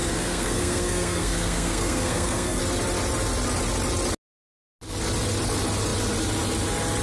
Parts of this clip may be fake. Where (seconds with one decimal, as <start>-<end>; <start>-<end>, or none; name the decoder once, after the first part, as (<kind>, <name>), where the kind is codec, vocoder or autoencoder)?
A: 0.0-2.6 (codec, SNAC)